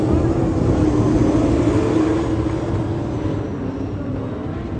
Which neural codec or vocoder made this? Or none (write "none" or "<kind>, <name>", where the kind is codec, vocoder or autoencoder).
none